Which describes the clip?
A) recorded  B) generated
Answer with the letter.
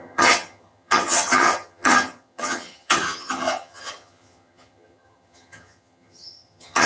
B